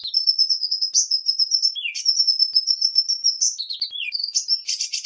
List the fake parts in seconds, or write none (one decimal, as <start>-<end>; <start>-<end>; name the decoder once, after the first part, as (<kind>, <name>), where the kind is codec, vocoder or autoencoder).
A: 1.0-4.1 (vocoder, BigVGAN v2)